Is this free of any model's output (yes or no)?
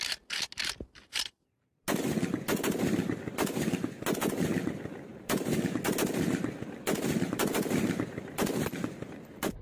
yes